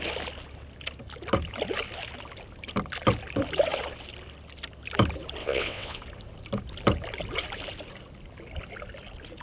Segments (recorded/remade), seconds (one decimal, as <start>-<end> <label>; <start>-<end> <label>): 0.0-5.4 recorded; 5.4-6.0 remade; 6.0-9.4 recorded